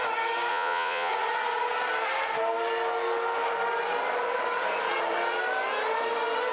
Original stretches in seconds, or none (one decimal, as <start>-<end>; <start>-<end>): 0.0-0.5; 1.1-6.5

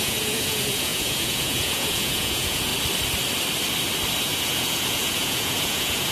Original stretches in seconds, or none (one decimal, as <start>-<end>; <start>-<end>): 2.7-4.2

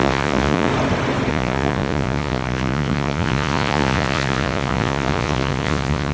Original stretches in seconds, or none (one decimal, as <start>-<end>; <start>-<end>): 0.7-1.3